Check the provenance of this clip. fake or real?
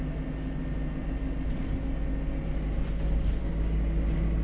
real